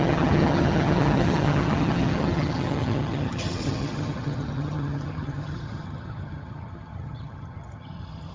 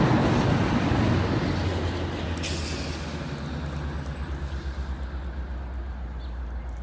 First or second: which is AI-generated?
first